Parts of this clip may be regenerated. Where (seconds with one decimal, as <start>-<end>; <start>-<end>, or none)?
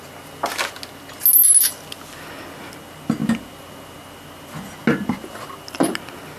none